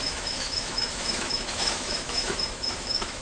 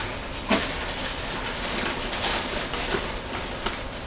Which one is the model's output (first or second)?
first